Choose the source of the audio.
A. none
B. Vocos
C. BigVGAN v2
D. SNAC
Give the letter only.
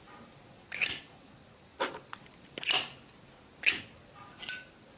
A